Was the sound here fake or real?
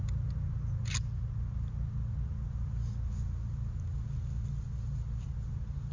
real